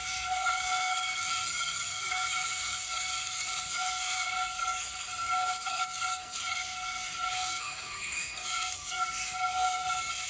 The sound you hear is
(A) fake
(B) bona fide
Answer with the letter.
A